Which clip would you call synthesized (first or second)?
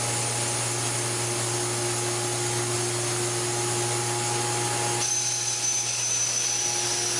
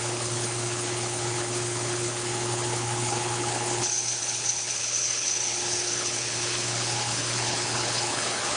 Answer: second